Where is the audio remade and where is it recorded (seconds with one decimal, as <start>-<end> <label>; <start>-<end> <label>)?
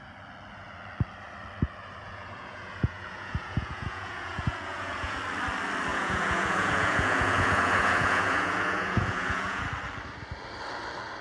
0.0-2.0 recorded; 2.0-5.2 remade; 5.2-5.9 recorded; 5.9-9.6 remade; 9.6-11.2 recorded